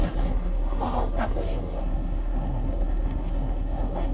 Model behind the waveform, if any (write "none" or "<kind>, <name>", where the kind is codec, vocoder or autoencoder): codec, SNAC